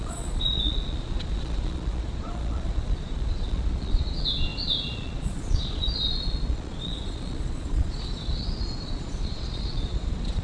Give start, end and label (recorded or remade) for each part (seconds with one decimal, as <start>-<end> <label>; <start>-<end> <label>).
0.0-10.4 remade